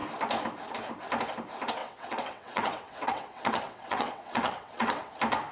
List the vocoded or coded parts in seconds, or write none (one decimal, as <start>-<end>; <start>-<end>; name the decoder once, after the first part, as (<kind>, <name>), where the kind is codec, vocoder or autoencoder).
1.8-5.1 (vocoder, WaveNeXt)